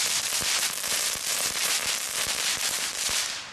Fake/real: fake